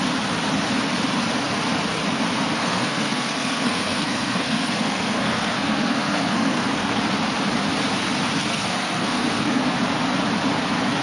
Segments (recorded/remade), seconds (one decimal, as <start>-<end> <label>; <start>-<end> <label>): 0.0-2.6 recorded; 2.6-7.0 remade; 7.0-8.5 recorded; 8.5-9.6 remade; 9.6-11.0 recorded